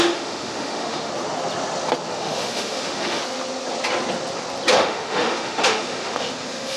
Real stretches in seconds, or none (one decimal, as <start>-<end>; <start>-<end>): 1.1-2.1; 3.2-4.7